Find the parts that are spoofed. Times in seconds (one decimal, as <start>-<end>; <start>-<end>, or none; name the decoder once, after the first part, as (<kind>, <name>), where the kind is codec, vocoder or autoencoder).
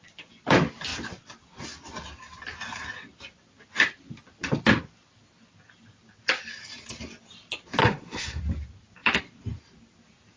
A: 7.8-8.4 (codec, SNAC)